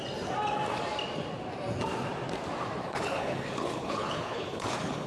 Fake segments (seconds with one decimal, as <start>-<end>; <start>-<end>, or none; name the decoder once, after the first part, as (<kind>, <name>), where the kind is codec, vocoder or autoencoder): 2.8-5.1 (codec, HILCodec)